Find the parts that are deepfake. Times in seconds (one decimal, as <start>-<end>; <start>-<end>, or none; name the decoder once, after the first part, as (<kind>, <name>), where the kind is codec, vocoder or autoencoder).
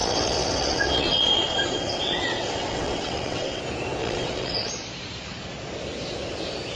0.0-3.6 (vocoder, WaveNeXt); 4.0-4.7